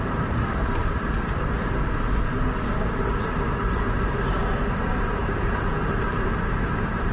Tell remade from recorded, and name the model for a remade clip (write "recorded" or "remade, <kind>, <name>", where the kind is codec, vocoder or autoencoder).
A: remade, vocoder, BigVGAN v2